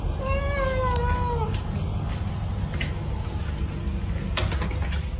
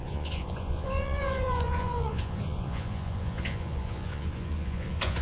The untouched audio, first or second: first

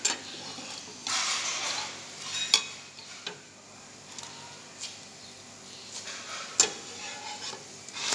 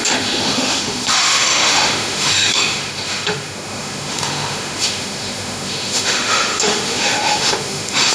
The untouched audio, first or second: first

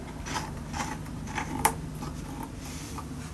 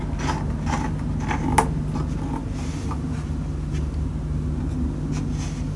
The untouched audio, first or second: second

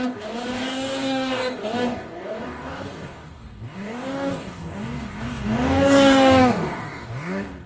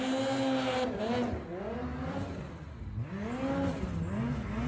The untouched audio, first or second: second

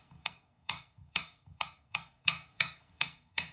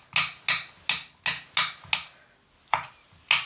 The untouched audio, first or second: second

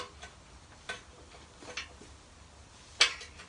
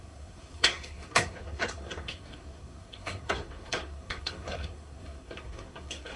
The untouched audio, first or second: first